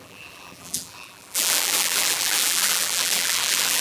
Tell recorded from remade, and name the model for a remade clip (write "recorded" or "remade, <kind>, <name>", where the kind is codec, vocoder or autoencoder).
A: remade, vocoder, BigVGAN v2